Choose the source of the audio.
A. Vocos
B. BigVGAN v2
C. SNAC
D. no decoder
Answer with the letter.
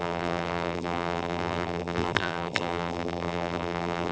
B